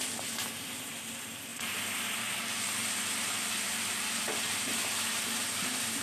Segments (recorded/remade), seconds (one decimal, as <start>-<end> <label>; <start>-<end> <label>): 0.0-6.0 recorded